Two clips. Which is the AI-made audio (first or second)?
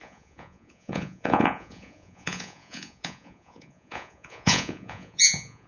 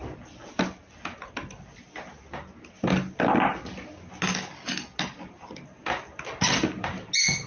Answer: first